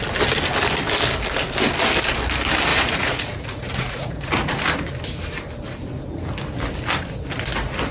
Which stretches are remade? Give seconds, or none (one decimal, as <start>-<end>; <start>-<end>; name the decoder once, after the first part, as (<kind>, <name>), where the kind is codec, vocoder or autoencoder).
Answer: 2.7-4.3 (vocoder, Vocos)